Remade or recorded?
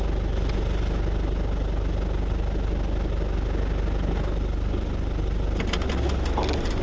recorded